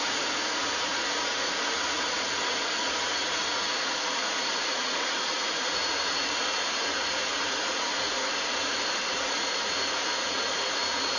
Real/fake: fake